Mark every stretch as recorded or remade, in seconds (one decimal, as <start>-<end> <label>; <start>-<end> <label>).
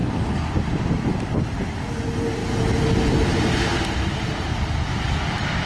0.0-5.7 recorded